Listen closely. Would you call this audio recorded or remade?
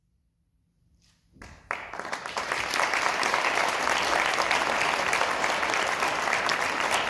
recorded